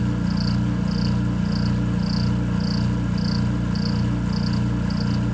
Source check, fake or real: real